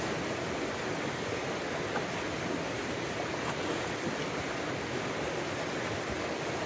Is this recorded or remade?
recorded